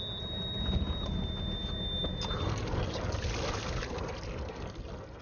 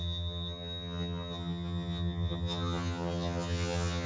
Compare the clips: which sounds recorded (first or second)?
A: first